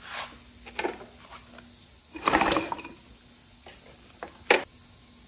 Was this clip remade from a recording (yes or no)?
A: no